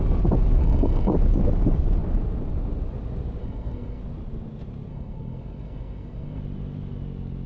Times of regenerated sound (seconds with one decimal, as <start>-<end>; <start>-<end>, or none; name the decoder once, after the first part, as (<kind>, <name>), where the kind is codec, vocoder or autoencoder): 0.6-1.1 (codec, SNAC); 3.4-4.0; 4.9-6.4

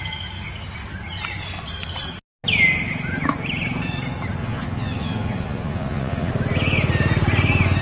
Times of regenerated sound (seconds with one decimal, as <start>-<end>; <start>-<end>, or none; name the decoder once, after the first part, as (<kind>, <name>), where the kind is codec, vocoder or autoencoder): 4.4-6.3 (vocoder, Vocos)

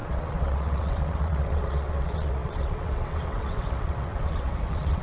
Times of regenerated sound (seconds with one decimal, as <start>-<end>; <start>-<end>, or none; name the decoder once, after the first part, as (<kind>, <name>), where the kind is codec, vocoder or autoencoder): 0.0-5.0 (vocoder, WaveNeXt)

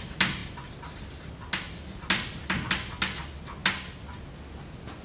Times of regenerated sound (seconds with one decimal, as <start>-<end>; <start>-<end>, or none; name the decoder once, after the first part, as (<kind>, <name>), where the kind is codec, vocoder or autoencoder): none

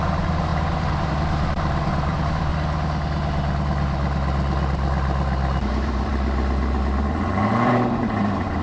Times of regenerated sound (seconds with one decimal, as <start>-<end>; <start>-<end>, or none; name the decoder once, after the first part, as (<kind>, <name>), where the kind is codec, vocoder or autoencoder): 0.0-2.5 (vocoder, BigVGAN v2); 5.6-6.1; 7.4-8.6